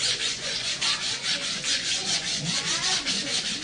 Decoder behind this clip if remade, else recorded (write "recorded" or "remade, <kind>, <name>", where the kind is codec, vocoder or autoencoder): remade, vocoder, Vocos